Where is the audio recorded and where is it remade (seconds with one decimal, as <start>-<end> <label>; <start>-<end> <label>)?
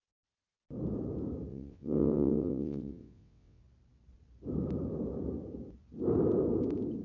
0.0-1.5 recorded; 1.5-3.6 remade; 3.6-7.0 recorded